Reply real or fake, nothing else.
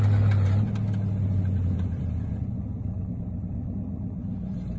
real